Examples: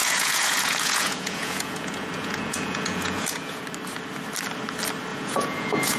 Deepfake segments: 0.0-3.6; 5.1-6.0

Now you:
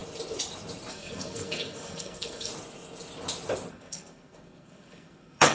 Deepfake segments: 0.9-2.5; 3.7-5.5

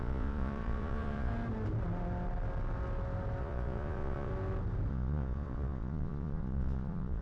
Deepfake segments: 0.0-1.3; 3.4-4.3; 4.9-7.2